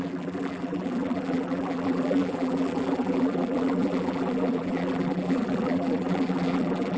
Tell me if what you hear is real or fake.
fake